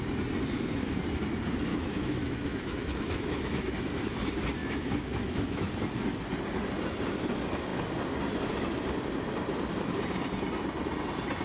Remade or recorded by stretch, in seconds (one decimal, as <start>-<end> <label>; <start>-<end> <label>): 0.0-1.7 recorded; 1.7-3.7 remade; 3.7-4.6 recorded; 4.6-5.7 remade; 5.7-11.4 recorded